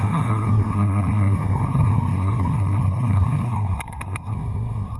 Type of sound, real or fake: fake